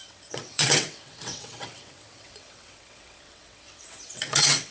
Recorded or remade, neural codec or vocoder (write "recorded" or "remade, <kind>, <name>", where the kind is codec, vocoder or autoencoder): remade, vocoder, WaveNeXt